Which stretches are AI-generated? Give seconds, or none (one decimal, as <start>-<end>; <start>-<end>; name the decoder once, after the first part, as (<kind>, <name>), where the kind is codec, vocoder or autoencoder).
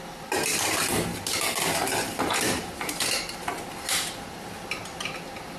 none